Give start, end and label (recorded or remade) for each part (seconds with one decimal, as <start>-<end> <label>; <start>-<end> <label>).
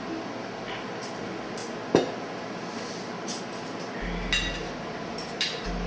0.0-5.9 recorded